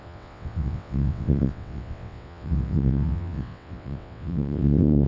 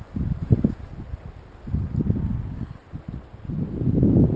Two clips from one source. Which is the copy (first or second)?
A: first